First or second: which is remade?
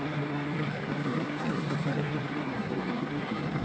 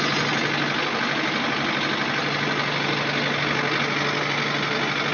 first